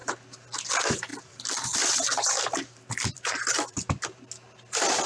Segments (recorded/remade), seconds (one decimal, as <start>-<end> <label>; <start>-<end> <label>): 0.0-1.1 recorded; 1.1-4.2 remade; 4.2-5.1 recorded